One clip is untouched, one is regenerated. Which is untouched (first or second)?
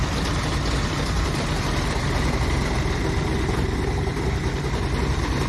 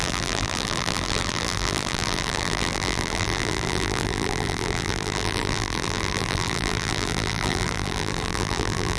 first